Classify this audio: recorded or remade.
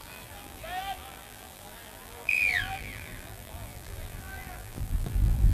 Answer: remade